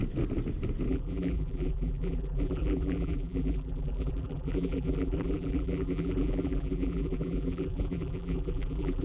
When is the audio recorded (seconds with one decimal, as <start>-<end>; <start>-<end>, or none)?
0.0-0.9